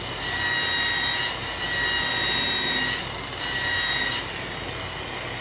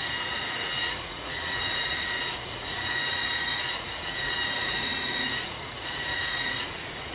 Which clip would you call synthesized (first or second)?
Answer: second